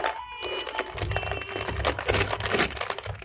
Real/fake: real